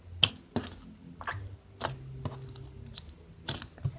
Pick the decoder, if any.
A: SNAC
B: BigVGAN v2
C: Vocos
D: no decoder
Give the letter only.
D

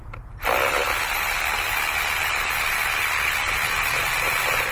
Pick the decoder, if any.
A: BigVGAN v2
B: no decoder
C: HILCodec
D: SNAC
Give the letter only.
B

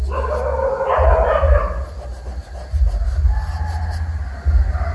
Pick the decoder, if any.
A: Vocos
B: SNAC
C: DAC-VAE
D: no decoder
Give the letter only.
D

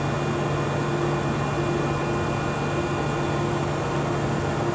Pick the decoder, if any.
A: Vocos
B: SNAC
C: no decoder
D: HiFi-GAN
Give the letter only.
C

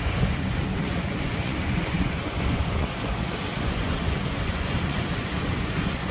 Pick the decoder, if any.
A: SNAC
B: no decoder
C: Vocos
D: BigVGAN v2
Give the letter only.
C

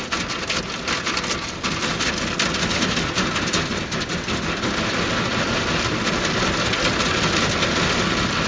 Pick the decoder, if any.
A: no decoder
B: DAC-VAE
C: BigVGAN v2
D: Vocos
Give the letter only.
A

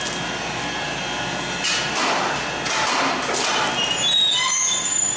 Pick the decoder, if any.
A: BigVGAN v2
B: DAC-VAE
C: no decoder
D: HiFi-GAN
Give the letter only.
A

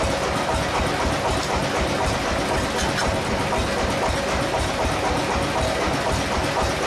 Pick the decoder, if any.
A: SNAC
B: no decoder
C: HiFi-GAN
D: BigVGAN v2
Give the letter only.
B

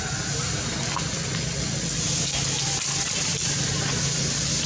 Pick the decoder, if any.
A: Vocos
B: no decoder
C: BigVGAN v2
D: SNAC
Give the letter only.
B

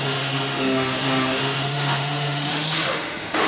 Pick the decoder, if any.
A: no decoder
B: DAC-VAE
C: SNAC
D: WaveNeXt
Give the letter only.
B